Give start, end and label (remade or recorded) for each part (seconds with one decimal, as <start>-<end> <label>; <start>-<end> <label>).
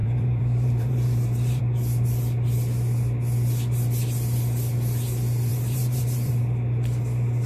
0.0-1.6 remade; 1.6-5.5 recorded; 5.5-6.3 remade; 6.3-7.5 recorded